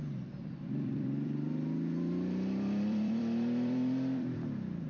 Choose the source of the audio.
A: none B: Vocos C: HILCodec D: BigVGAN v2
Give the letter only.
D